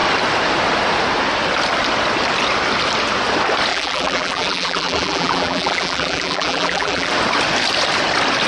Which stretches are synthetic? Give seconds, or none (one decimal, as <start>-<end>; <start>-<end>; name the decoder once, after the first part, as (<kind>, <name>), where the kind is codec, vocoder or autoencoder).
3.7-7.1 (vocoder, BigVGAN v2)